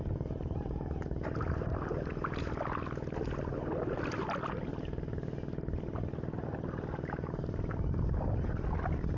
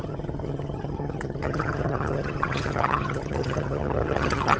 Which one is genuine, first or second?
first